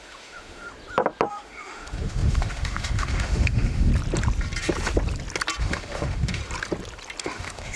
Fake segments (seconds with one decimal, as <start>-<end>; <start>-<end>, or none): 0.0-0.7; 1.3-3.9; 5.6-6.4; 7.2-7.8